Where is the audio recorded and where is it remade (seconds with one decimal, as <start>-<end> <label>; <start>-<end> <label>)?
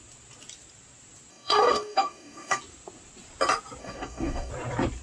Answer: 0.0-1.3 recorded; 1.3-2.6 remade; 2.6-3.8 recorded; 3.8-4.5 remade; 4.5-5.0 recorded